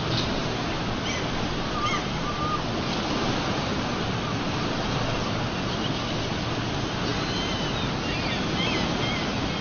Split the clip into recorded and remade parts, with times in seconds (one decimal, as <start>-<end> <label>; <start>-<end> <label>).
0.0-9.6 recorded